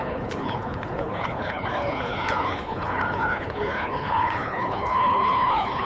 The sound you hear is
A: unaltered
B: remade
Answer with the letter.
B